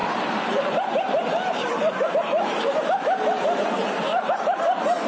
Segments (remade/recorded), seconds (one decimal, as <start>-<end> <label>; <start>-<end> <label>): 0.0-5.1 recorded